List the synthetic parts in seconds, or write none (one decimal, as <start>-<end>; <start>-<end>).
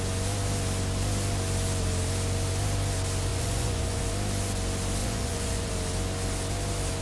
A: 3.3-4.1; 5.0-5.7